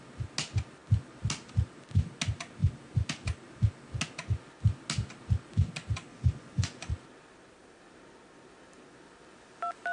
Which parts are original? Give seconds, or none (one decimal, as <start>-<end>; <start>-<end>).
0.0-6.1; 6.9-9.9